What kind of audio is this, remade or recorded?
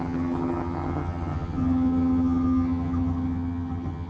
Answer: remade